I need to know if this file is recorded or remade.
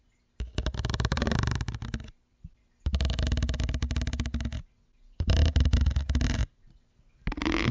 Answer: recorded